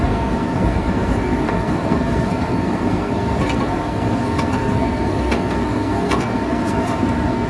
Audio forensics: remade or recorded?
remade